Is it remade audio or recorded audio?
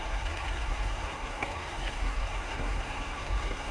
remade